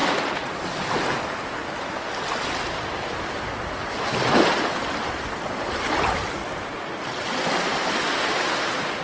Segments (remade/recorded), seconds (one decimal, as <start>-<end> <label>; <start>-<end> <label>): 0.0-0.5 remade; 0.5-9.0 recorded